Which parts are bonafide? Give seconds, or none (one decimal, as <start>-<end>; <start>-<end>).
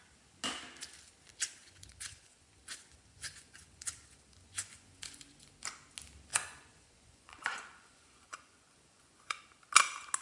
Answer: 0.0-1.6; 5.5-6.3; 9.4-10.2